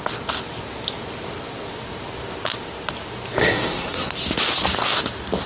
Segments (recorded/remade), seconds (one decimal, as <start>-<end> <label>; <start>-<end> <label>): 0.0-3.4 recorded; 3.4-4.1 remade; 4.1-5.5 recorded